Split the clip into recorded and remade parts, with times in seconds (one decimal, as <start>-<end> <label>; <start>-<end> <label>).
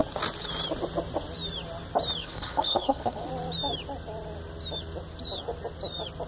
0.0-2.2 recorded; 2.2-3.3 remade; 3.3-6.3 recorded